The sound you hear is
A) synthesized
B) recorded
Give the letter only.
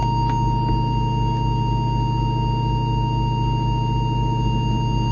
B